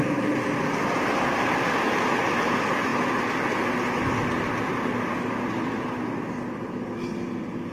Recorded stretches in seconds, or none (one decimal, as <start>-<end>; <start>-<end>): 0.0-7.7